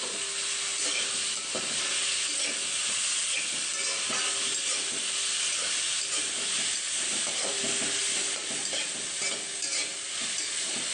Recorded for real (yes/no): yes